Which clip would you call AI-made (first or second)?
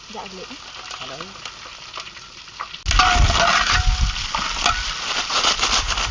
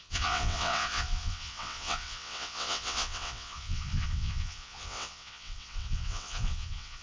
second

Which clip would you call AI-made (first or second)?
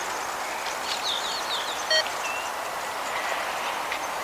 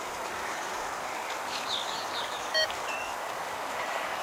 second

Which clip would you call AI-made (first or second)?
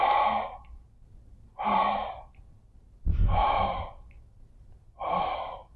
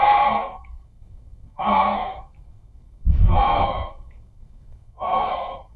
second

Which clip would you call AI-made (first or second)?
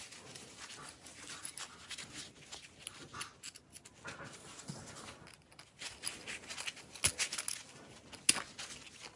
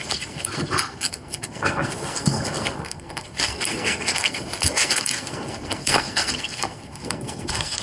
second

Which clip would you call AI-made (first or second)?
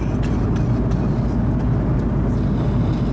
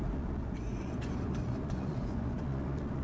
second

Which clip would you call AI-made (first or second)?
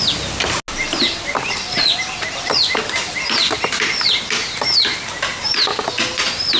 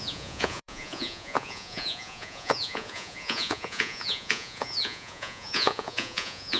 second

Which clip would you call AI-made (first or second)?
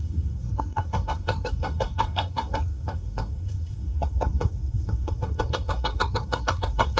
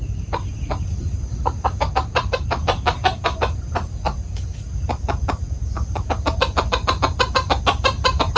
first